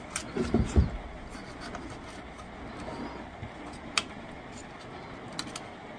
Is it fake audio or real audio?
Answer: real